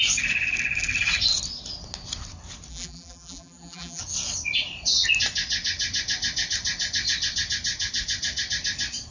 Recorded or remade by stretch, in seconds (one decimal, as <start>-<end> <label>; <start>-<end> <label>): 0.0-2.7 recorded; 2.7-4.0 remade; 4.0-9.1 recorded